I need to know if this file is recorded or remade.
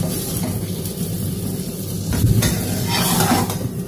remade